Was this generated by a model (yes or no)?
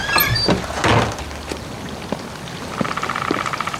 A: no